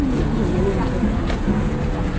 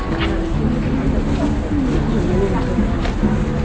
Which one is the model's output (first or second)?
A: first